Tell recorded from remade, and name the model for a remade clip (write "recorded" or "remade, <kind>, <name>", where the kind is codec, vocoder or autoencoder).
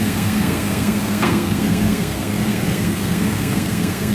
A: remade, codec, SNAC